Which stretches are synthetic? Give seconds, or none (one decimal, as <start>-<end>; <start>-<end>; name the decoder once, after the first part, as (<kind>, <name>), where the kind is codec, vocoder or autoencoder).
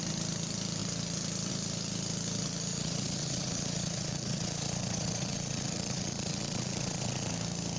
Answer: 2.7-7.3 (vocoder, Vocos)